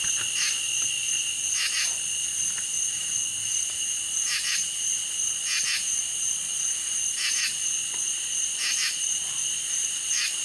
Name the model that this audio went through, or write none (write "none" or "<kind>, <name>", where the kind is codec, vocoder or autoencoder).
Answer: none